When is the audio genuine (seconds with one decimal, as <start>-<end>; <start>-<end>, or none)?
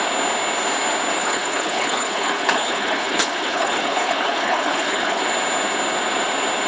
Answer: 0.0-1.2; 5.2-6.7